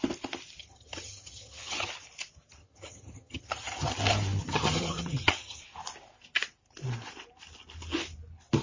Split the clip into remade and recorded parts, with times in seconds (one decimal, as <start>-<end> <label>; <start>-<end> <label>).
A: 0.0-0.6 recorded; 0.6-1.9 remade; 1.9-2.6 recorded; 2.6-4.0 remade; 4.0-4.4 recorded; 4.4-5.6 remade; 5.6-8.6 recorded